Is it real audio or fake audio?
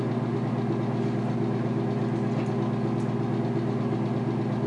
real